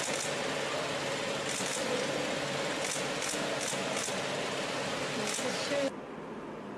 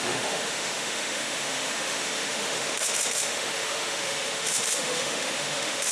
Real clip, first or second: first